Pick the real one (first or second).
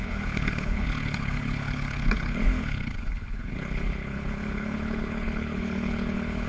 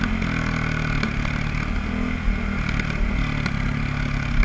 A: second